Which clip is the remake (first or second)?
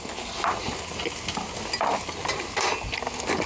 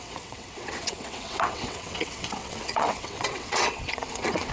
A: second